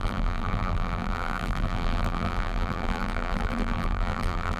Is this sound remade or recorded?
remade